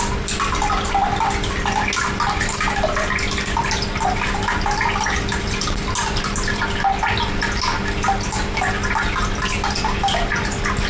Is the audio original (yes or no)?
yes